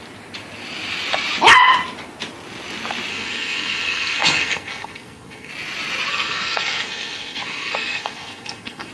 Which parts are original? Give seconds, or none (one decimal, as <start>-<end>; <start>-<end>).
0.0-3.1; 5.5-6.1

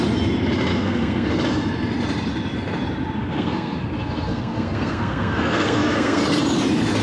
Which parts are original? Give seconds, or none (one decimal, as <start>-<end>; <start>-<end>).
0.0-0.7; 1.3-3.2; 6.2-7.0

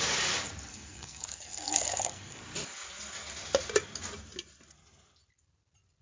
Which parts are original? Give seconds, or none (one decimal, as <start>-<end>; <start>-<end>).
0.0-0.7; 2.4-6.0